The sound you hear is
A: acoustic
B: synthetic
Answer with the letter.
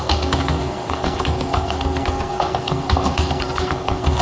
B